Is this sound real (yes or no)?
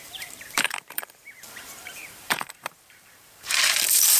no